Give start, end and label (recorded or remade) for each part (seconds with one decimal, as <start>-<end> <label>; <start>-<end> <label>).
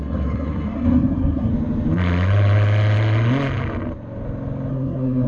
0.0-1.5 remade; 1.5-4.7 recorded; 4.7-5.3 remade